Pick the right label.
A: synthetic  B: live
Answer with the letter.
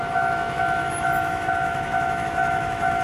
A